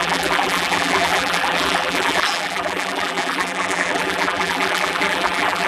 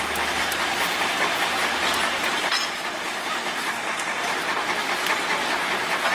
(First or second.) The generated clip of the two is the first